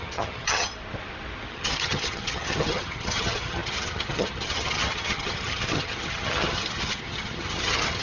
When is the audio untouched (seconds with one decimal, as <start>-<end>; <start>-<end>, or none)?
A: 0.7-1.5